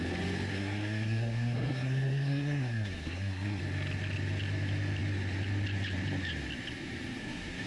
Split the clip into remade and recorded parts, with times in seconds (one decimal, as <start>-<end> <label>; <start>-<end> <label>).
0.0-0.5 recorded; 0.5-3.6 remade; 3.6-7.2 recorded; 7.2-7.7 remade